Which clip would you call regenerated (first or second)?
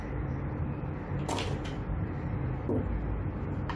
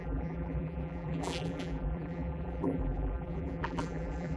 second